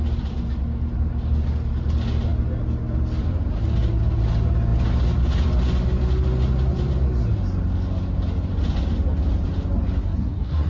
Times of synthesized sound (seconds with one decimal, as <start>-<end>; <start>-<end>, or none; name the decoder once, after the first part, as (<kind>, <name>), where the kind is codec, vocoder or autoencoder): 10.0-10.7 (codec, SNAC)